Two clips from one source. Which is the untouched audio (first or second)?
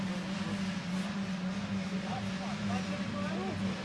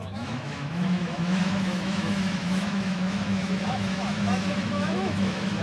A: first